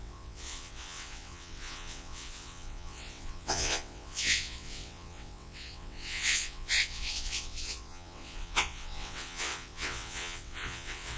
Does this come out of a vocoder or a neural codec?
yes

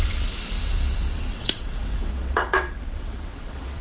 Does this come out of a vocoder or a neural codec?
yes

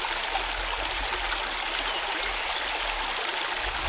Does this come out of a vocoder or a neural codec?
no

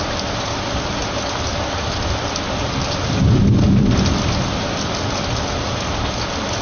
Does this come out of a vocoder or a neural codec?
no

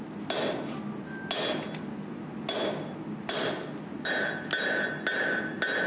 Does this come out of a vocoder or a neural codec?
no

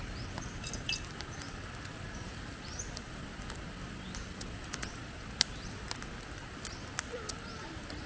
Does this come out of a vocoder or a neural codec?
no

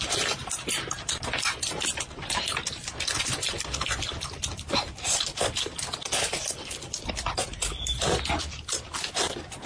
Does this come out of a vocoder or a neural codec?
no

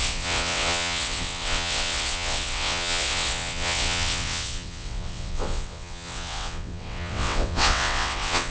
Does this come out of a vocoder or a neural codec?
yes